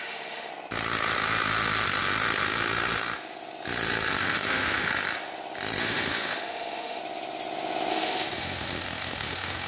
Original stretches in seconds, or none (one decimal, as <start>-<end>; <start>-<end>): 0.5-4.2; 4.9-5.8; 7.0-7.9